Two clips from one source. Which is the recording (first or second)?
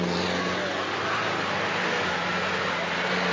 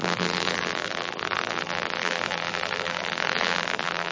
first